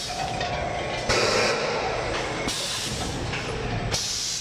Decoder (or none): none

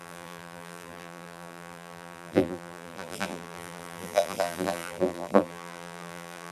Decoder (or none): vocoder, BigVGAN v2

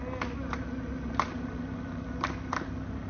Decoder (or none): none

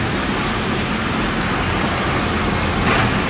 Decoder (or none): none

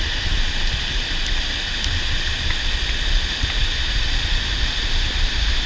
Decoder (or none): none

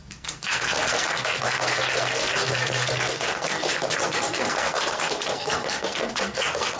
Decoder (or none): codec, SNAC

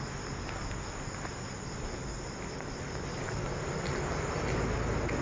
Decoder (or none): none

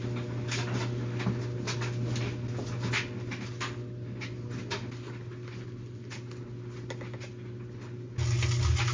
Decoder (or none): none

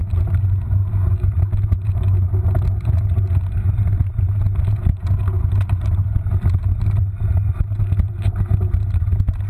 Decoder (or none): none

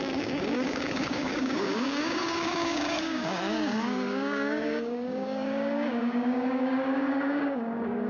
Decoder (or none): codec, DAC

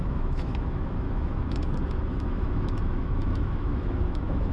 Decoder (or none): autoencoder, DAC-VAE